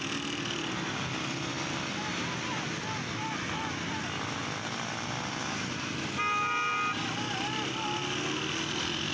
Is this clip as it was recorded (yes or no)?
yes